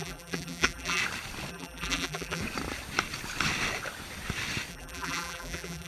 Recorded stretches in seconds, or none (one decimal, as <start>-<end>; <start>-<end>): 1.0-1.5; 2.4-4.7